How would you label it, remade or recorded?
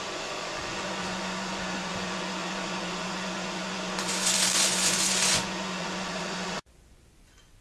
remade